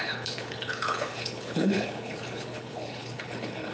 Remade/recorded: remade